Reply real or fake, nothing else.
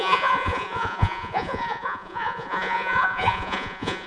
fake